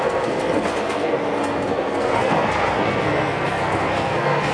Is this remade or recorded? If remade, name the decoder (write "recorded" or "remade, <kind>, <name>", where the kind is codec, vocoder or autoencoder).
remade, codec, SNAC